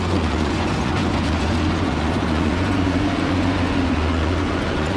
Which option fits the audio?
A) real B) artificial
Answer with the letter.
B